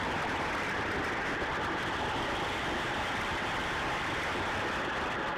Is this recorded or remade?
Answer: recorded